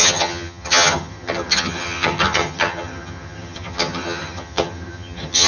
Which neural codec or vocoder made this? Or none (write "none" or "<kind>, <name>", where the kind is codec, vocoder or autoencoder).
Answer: vocoder, HiFi-GAN